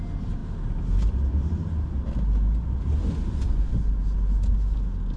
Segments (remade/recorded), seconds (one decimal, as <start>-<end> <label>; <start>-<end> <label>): 0.0-5.2 recorded